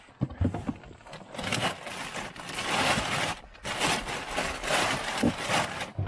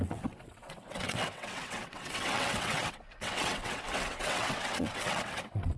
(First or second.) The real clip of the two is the first